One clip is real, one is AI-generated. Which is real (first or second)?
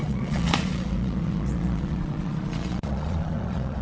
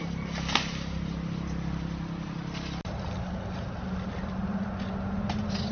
second